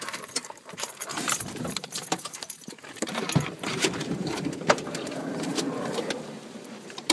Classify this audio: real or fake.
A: fake